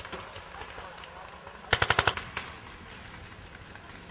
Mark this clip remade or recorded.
recorded